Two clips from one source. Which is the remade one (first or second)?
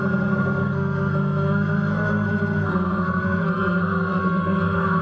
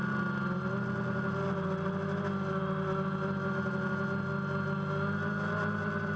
first